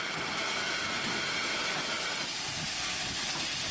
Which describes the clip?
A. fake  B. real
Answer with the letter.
B